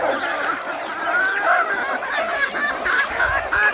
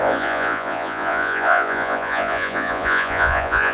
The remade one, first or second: second